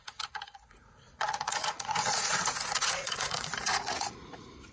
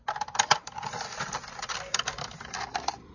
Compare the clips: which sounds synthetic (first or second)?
first